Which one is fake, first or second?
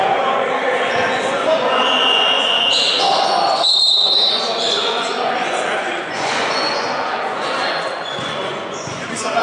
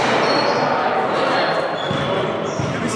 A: first